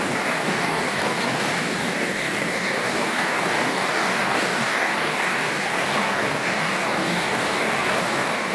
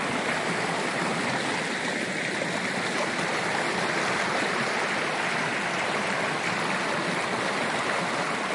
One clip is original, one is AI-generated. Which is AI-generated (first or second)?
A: first